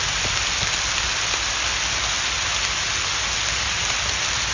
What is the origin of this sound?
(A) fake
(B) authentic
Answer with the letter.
B